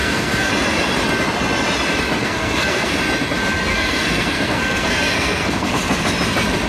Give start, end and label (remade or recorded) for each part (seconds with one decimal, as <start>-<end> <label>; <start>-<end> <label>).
0.0-0.5 remade; 0.5-2.2 recorded; 2.2-3.0 remade; 3.0-3.7 recorded; 3.7-5.7 remade; 5.7-6.7 recorded